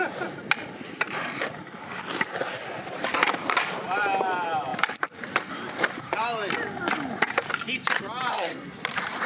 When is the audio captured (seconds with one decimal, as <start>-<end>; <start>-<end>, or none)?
0.0-8.3; 8.8-9.3